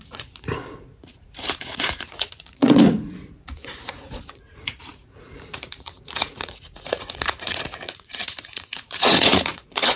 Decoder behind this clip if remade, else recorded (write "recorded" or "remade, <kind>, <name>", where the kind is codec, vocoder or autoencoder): remade, vocoder, Vocos